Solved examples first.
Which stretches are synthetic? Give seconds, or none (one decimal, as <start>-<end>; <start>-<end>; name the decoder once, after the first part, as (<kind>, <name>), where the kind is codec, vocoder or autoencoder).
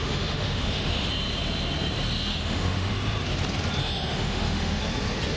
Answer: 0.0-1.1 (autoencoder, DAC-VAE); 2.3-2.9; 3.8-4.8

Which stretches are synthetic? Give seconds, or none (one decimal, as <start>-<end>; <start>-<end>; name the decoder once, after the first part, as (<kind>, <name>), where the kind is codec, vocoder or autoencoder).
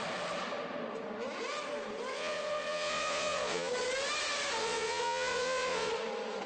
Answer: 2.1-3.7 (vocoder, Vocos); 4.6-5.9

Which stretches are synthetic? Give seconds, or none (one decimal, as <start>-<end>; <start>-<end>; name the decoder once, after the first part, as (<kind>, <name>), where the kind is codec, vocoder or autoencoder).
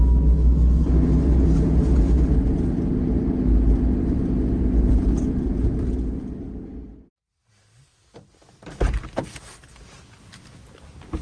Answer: none